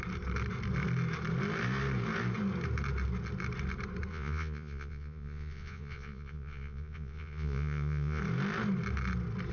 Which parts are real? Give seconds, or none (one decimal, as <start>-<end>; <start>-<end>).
0.0-4.1; 8.2-9.5